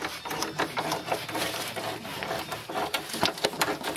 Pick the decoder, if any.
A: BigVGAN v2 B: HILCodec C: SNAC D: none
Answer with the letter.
D